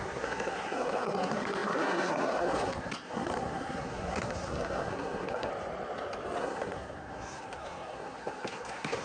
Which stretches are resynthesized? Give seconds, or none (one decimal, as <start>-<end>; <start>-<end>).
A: 0.0-5.5; 6.4-9.0